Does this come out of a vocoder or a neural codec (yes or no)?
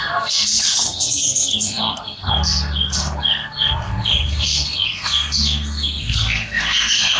yes